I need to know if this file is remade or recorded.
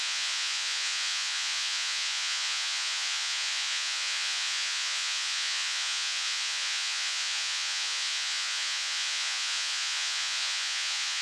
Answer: remade